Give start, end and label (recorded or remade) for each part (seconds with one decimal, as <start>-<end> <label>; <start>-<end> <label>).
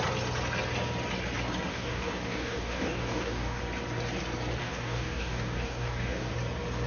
0.0-1.7 recorded; 1.7-3.6 remade; 3.6-4.6 recorded; 4.6-6.3 remade; 6.3-6.9 recorded